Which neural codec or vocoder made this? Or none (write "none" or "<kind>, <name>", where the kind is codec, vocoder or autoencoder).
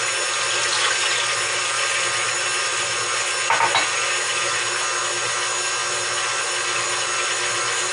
none